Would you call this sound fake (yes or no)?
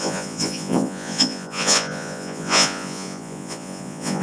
yes